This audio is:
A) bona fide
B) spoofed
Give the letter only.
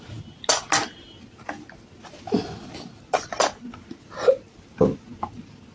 A